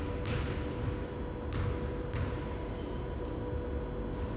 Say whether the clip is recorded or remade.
recorded